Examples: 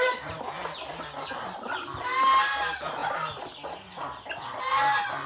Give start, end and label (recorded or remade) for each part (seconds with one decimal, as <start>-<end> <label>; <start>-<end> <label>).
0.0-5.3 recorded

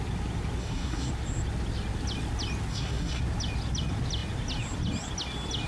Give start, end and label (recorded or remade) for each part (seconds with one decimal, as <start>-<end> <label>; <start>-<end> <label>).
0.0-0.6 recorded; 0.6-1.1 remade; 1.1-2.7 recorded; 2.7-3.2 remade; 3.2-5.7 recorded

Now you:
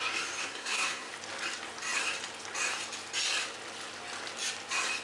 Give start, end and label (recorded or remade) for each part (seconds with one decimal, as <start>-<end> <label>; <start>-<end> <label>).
0.0-0.4 recorded; 0.4-1.1 remade; 1.1-5.0 recorded

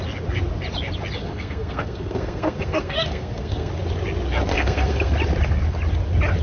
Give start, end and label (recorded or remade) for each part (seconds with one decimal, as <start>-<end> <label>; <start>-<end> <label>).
0.0-1.2 recorded; 1.2-3.7 remade; 3.7-4.5 recorded; 4.5-5.1 remade; 5.1-6.4 recorded